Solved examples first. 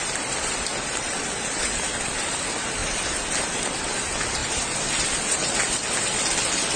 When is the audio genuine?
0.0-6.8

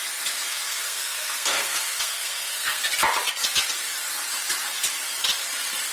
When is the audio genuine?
0.0-0.5; 2.8-5.9

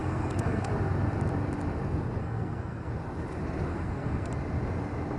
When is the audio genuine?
0.7-2.2; 2.9-3.7; 4.3-5.2

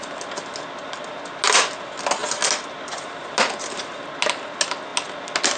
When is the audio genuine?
0.0-5.6

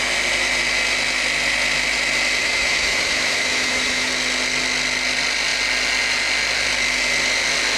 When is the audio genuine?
0.0-2.4; 4.1-7.8

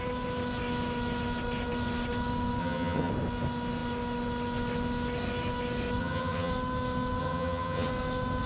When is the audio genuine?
0.0-2.6; 3.1-6.0; 6.5-7.2; 7.9-8.5

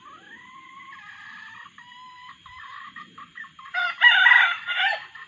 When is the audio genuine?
0.0-2.2